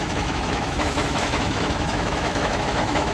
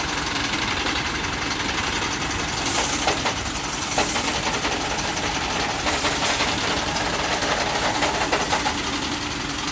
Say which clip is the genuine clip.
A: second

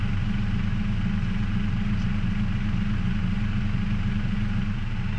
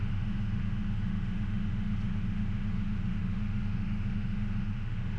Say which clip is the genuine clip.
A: first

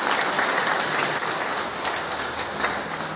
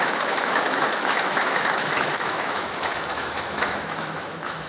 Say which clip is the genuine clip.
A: first